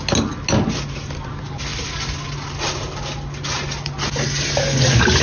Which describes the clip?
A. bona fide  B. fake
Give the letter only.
A